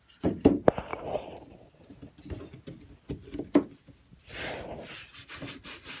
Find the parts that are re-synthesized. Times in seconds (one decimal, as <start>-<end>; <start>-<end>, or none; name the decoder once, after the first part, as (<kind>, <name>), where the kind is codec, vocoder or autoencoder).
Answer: none